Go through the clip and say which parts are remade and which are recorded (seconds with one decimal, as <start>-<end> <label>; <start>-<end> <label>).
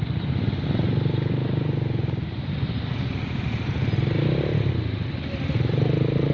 0.0-6.3 recorded